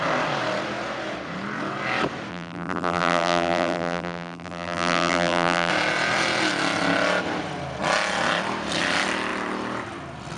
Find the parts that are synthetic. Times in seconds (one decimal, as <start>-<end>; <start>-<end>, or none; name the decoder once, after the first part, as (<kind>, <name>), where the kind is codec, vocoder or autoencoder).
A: 2.3-5.7 (vocoder, BigVGAN v2)